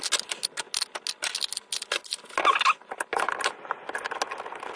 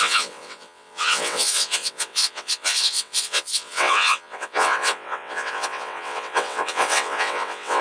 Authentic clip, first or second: first